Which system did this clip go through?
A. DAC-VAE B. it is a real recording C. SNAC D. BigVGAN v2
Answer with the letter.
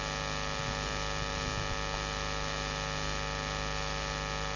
B